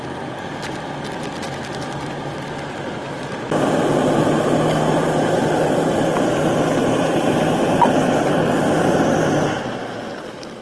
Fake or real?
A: real